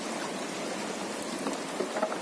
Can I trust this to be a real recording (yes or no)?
yes